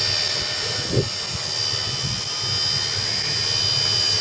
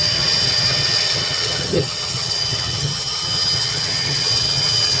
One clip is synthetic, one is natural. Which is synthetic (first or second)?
second